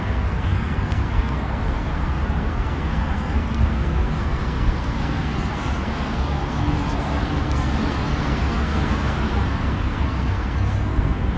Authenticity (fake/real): fake